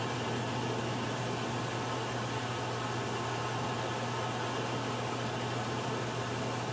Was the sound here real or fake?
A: real